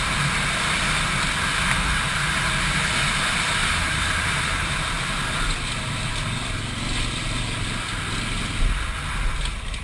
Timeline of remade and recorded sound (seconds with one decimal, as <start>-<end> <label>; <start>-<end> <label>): 0.0-3.6 recorded; 3.6-4.7 remade; 4.7-9.8 recorded